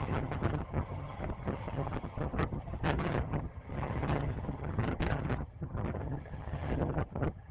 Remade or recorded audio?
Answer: remade